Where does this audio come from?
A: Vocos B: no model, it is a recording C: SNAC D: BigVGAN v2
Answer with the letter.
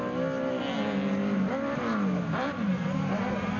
B